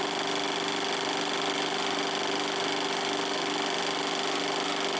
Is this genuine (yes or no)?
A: yes